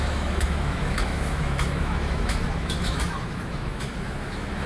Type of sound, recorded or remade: remade